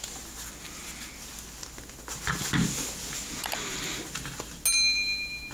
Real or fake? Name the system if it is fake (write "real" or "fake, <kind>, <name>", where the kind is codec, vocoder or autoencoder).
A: real